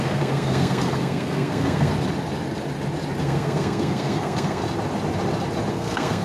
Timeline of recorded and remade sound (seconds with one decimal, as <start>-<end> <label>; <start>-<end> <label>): 0.0-1.9 remade; 1.9-3.2 recorded; 3.2-4.6 remade; 4.6-5.7 recorded; 5.7-6.2 remade

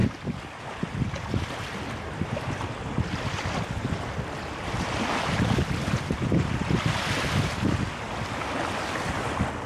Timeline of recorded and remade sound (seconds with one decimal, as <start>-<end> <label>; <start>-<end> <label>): 0.0-9.7 recorded